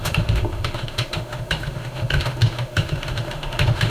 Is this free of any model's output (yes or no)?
no